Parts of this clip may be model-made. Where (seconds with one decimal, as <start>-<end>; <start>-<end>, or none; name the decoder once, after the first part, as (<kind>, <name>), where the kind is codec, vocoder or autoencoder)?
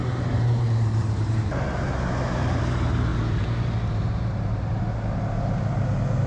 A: 0.0-2.6 (vocoder, BigVGAN v2); 3.1-4.8